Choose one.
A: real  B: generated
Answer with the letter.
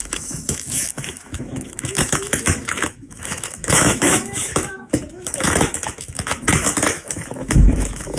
B